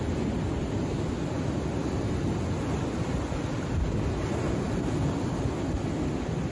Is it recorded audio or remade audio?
recorded